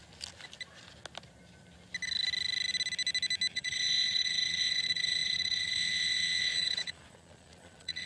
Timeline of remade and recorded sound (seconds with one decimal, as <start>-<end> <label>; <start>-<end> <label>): 0.0-3.5 recorded; 3.5-8.1 remade